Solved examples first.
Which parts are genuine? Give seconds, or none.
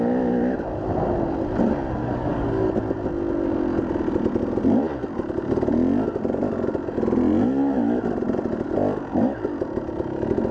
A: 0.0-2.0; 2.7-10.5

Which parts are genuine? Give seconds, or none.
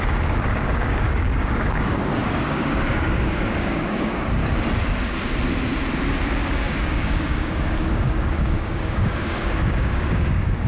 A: 4.4-6.4